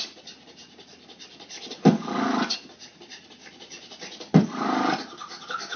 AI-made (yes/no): no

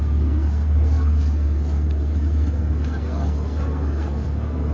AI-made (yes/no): yes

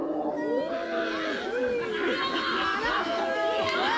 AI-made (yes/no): no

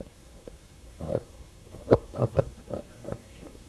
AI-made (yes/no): yes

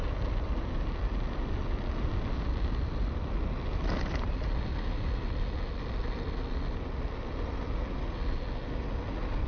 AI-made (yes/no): no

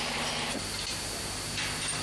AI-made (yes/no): yes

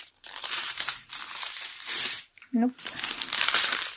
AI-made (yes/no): yes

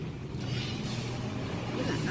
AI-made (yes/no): no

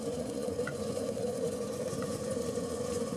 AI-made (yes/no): yes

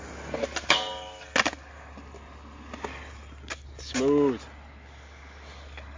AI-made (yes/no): no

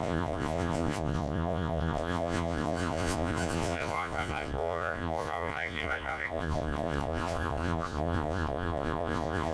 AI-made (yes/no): yes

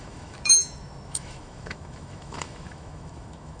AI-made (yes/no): yes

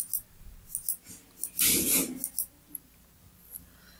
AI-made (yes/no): no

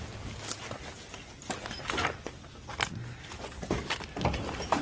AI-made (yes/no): no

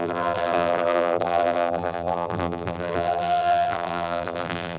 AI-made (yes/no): yes